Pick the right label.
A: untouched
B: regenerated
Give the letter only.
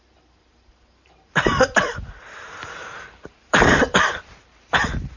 B